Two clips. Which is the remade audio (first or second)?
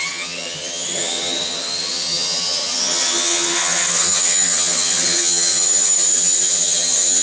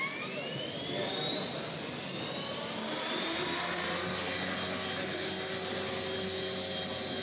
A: first